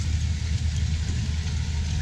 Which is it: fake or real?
real